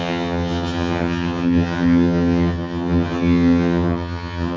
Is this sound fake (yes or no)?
yes